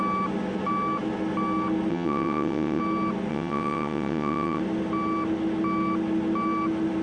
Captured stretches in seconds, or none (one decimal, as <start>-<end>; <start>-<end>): 0.0-1.9; 2.8-3.3; 4.6-7.0